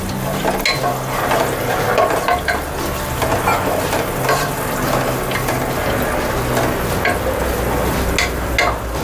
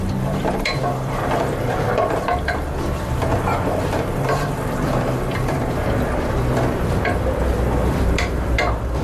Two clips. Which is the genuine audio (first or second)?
first